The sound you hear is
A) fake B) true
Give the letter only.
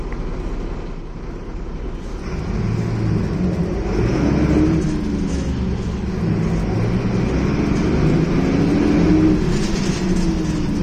B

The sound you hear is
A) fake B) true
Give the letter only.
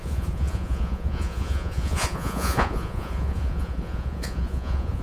A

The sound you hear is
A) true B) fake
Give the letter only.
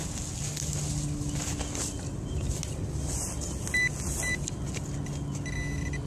A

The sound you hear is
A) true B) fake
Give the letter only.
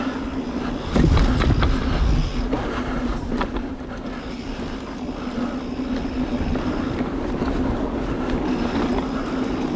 A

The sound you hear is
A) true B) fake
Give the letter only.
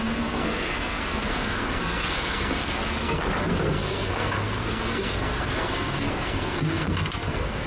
B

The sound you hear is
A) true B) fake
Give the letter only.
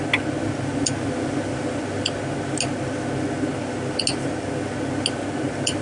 A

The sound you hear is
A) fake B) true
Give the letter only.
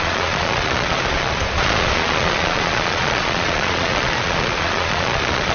A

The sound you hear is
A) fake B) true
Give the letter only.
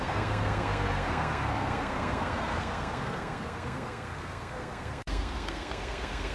A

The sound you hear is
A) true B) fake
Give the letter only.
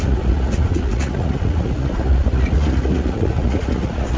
B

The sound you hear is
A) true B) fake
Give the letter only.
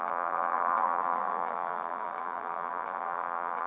B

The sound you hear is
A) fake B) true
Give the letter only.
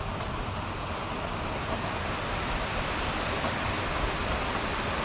B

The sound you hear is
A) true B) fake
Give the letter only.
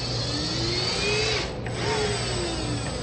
A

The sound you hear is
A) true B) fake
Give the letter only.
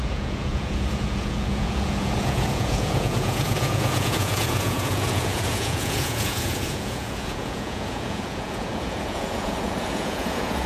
B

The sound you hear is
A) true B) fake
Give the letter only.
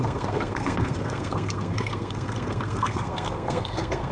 B